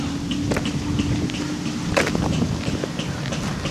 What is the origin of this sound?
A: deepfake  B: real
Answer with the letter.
B